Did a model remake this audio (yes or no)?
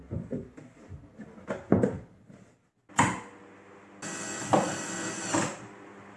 no